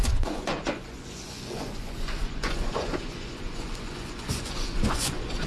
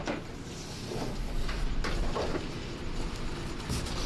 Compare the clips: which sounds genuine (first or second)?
second